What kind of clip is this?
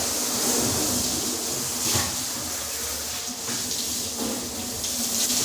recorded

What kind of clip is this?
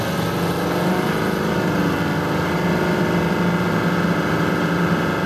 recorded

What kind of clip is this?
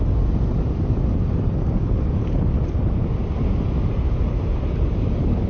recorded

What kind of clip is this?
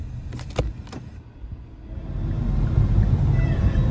recorded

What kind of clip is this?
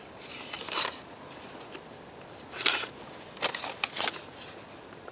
recorded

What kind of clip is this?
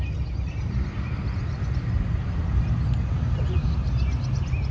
recorded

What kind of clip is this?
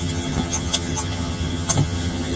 remade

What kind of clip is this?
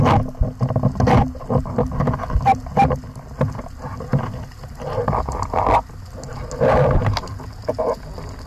recorded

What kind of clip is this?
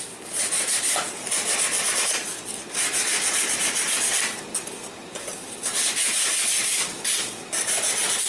recorded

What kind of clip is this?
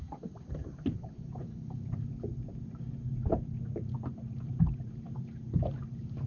remade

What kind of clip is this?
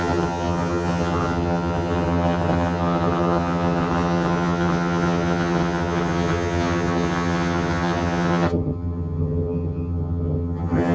remade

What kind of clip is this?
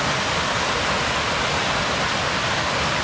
recorded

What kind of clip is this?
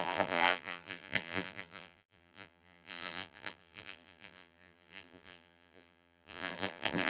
remade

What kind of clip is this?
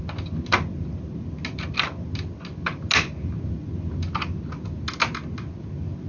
recorded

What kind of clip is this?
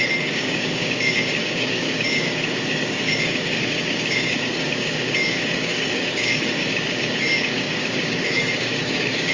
remade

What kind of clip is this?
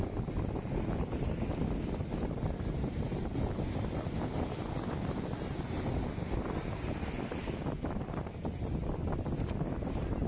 recorded